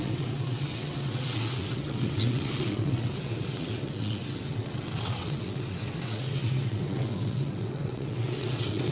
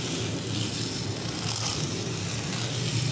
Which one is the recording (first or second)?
second